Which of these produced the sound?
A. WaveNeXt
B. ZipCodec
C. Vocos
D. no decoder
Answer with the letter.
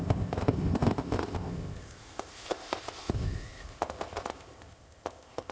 B